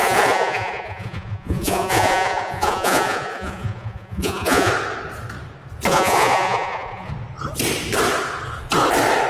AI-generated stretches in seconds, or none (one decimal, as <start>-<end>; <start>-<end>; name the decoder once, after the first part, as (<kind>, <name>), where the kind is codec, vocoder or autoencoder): 0.0-4.7 (vocoder, Vocos); 5.9-7.1